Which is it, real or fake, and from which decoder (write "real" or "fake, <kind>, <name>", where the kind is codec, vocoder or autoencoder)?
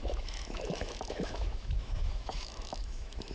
fake, autoencoder, DAC-VAE